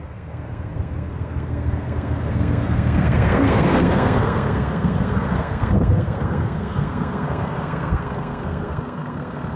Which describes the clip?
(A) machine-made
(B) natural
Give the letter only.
A